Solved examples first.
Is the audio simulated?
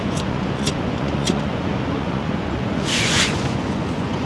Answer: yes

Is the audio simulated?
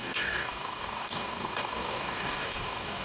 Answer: yes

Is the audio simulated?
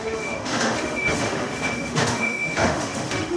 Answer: yes